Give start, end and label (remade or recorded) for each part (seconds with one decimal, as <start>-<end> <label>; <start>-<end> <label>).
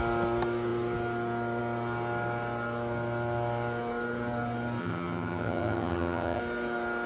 0.0-4.8 recorded; 4.8-6.4 remade; 6.4-7.1 recorded